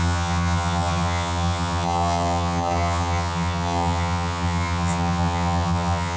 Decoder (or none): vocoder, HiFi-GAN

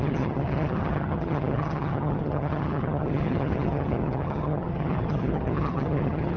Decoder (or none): vocoder, HiFi-GAN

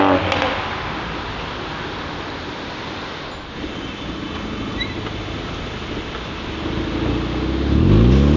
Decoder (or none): none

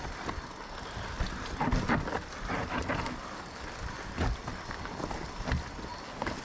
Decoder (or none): none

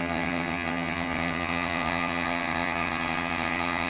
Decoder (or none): vocoder, HiFi-GAN